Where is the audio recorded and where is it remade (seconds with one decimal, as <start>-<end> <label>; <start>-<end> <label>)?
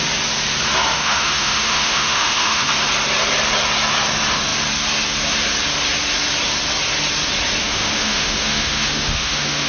0.0-0.9 recorded; 0.9-2.7 remade; 2.7-7.6 recorded; 7.6-9.7 remade